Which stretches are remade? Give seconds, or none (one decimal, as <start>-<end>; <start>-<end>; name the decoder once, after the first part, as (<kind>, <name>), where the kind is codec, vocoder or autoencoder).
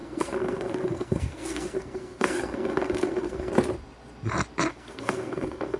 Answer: 0.0-3.5 (codec, SNAC); 4.7-5.8